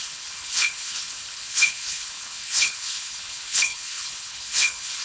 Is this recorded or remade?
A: remade